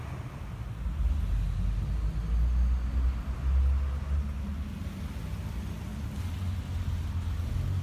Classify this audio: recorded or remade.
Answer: recorded